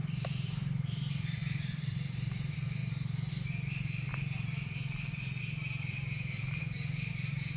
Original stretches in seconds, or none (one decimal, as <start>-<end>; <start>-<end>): 2.8-3.3; 4.1-5.4; 6.6-7.1